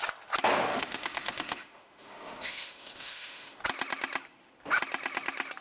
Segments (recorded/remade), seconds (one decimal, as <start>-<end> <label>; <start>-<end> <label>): 0.0-0.7 recorded; 0.7-3.6 remade; 3.6-5.6 recorded